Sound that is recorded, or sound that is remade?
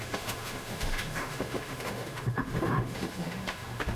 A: remade